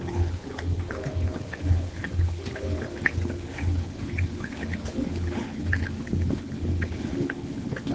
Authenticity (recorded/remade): remade